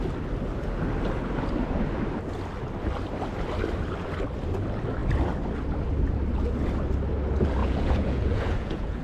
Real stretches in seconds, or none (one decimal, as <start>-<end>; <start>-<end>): 0.0-7.6